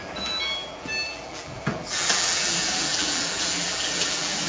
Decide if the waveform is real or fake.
fake